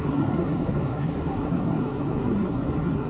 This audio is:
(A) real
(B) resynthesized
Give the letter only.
B